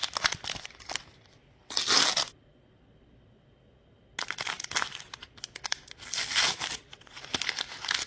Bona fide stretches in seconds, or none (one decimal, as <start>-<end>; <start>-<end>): 1.1-8.1